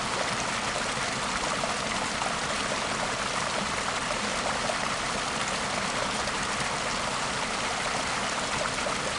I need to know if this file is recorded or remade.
recorded